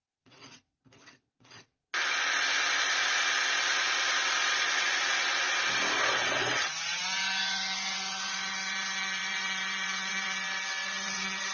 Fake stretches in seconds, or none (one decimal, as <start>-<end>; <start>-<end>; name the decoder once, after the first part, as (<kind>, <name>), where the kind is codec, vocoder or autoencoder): 0.0-1.8 (vocoder, WaveNeXt); 6.0-11.5